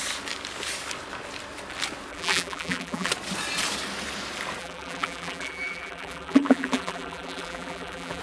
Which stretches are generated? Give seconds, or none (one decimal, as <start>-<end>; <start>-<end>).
2.1-3.1; 4.6-8.2